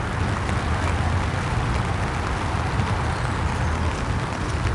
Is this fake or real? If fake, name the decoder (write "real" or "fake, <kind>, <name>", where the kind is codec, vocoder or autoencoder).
real